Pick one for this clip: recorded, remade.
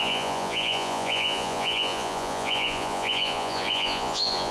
remade